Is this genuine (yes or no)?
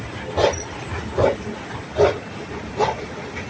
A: yes